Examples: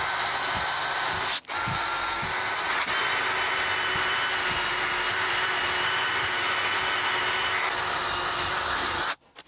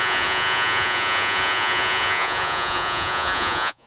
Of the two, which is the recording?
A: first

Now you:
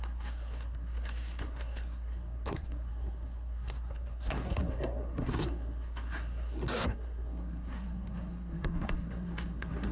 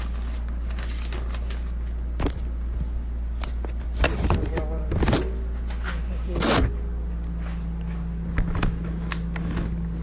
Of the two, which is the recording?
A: second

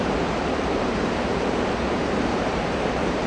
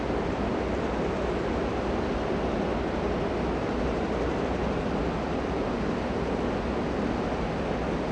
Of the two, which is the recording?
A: second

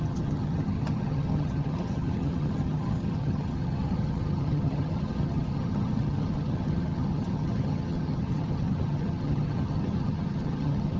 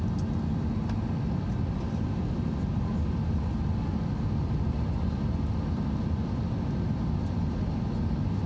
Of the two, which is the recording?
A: second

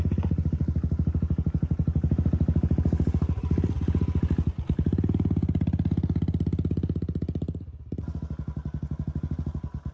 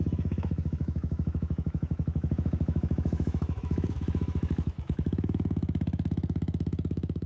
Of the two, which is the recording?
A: first